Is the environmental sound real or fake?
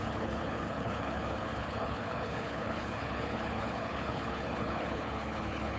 fake